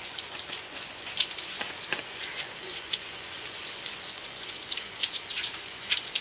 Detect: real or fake fake